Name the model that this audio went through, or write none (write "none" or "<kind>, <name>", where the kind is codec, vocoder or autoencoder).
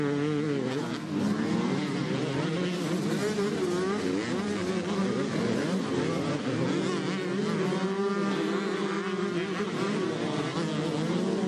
none